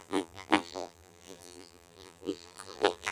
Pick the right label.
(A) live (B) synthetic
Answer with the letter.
B